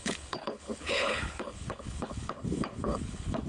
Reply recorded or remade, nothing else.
remade